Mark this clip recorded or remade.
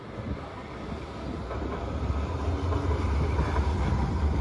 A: recorded